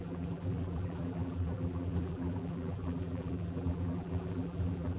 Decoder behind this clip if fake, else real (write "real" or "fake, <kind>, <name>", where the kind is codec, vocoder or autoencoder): fake, vocoder, BigVGAN v2